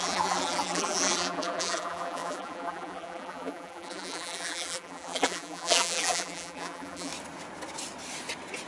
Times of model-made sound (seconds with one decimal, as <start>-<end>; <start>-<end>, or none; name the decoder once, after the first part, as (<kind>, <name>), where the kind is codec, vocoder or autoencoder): 0.0-7.1 (vocoder, BigVGAN v2)

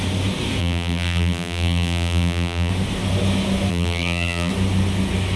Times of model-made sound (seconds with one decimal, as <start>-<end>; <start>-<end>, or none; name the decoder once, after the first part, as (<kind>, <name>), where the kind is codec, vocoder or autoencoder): 0.6-2.7 (vocoder, BigVGAN v2); 3.7-4.5

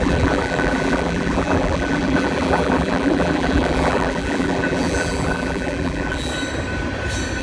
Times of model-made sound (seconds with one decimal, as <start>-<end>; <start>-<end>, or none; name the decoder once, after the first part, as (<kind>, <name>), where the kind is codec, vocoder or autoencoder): 0.0-6.3 (vocoder, BigVGAN v2)

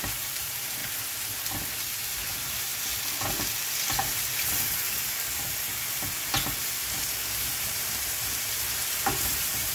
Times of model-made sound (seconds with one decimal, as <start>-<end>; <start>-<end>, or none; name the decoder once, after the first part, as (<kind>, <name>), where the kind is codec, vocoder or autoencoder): 0.0-0.8 (vocoder, BigVGAN v2); 1.8-2.7; 7.6-9.7